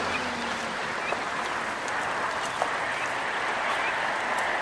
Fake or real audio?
real